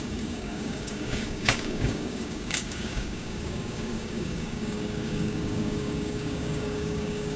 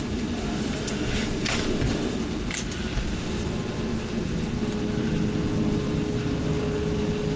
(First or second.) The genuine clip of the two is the second